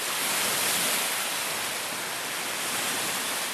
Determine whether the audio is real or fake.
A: real